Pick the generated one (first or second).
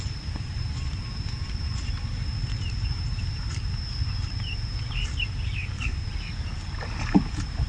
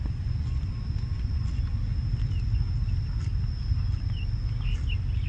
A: first